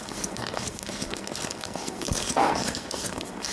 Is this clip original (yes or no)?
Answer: no